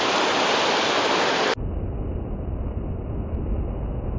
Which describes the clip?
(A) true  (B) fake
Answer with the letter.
A